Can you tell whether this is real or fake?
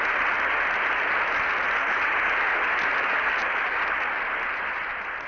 real